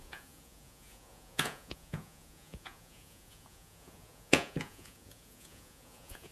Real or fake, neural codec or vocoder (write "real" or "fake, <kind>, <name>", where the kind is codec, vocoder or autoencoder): fake, vocoder, Vocos